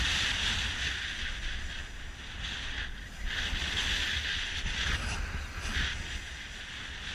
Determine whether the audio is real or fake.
real